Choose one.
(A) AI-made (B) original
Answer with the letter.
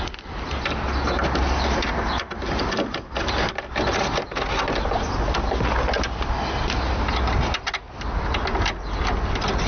B